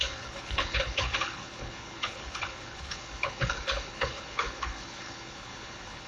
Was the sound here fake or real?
fake